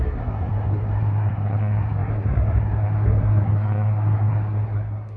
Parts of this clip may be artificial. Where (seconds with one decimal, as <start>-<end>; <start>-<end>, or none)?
0.0-5.2